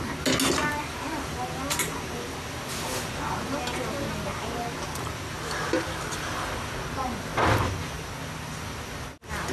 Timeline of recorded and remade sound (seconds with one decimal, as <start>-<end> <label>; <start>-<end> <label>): 0.0-9.5 recorded